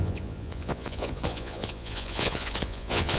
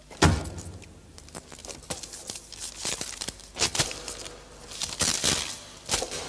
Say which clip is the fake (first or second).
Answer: first